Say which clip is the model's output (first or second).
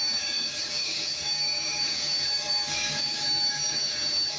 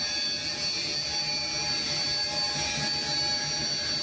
first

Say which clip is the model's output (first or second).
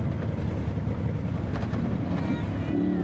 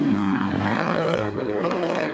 second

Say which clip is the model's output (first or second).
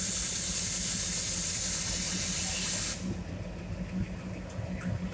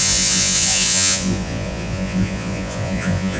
second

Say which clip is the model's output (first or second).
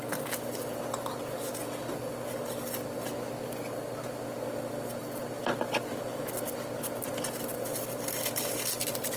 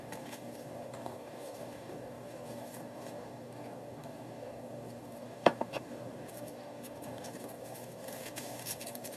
second